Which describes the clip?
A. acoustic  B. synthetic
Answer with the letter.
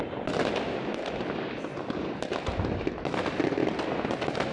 A